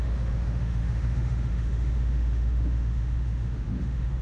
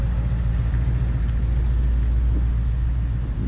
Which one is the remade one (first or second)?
first